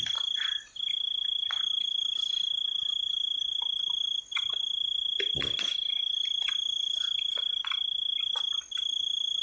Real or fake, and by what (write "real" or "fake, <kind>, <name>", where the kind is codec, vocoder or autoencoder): real